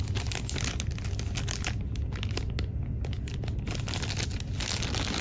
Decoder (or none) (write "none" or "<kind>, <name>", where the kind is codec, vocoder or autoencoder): none